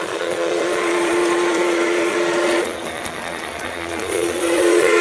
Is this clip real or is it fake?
fake